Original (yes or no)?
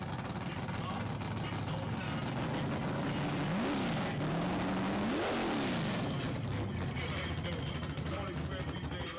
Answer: yes